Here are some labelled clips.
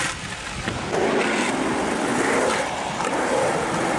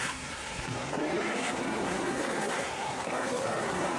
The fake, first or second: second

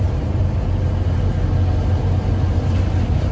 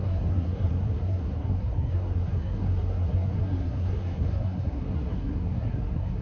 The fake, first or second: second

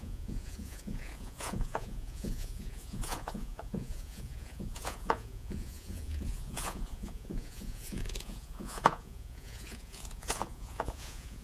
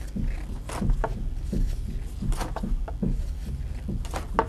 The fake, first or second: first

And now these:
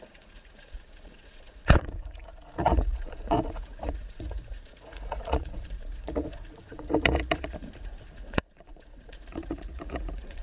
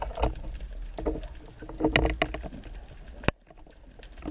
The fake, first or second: first